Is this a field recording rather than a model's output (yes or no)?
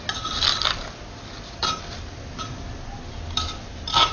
yes